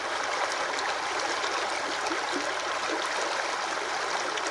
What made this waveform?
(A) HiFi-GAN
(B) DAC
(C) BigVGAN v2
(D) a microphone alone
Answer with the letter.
D